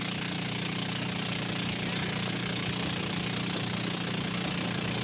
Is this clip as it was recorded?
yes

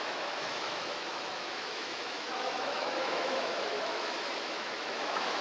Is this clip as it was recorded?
no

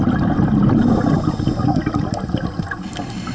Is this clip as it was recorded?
yes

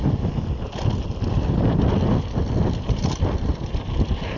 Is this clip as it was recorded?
yes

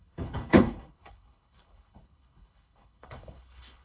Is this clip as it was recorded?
no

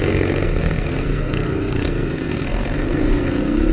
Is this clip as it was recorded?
no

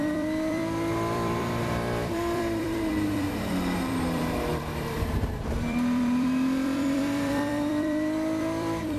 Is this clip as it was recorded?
no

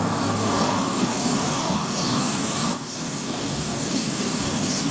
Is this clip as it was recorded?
no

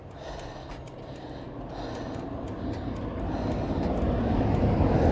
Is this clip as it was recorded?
yes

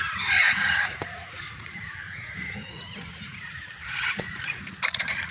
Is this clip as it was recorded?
no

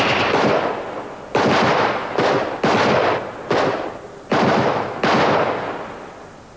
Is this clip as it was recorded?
yes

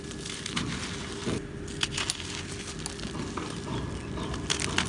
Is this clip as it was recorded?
yes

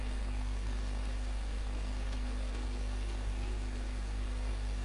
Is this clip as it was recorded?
no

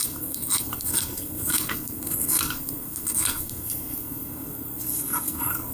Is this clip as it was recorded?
no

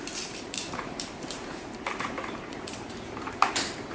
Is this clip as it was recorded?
no